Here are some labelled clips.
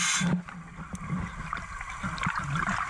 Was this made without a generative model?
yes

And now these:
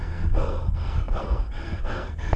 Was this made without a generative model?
no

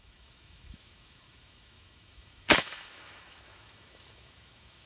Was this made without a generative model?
no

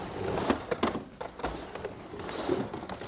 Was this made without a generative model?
yes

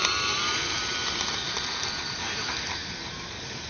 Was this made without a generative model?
no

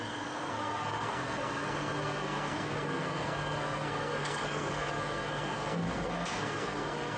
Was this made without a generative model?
no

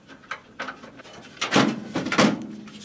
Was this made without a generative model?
yes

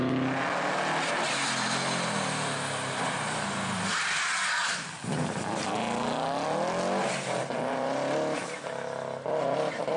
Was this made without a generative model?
yes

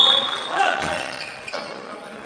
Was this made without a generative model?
no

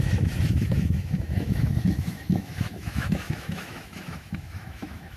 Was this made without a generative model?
no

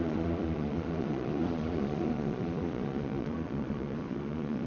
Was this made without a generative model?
no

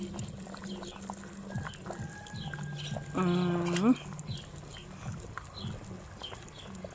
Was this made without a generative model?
yes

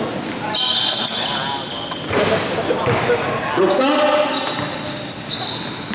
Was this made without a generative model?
yes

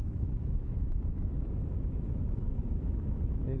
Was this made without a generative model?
no